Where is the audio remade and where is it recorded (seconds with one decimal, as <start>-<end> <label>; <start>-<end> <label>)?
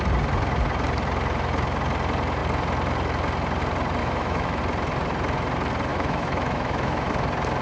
0.0-4.0 recorded; 4.0-4.6 remade; 4.6-5.9 recorded; 5.9-7.1 remade; 7.1-7.6 recorded